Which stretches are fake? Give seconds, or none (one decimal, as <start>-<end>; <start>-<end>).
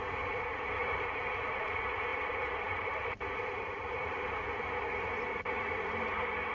0.8-1.6; 2.1-6.0